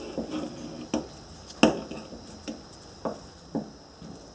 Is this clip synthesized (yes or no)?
no